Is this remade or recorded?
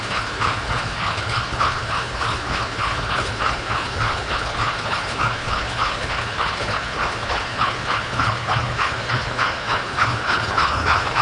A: remade